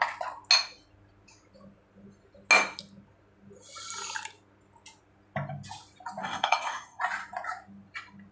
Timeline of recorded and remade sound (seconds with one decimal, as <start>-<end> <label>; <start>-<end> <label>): 0.0-6.2 recorded; 6.2-7.0 remade; 7.0-8.3 recorded